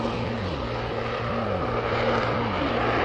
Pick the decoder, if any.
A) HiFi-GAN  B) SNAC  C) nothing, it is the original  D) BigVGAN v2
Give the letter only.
C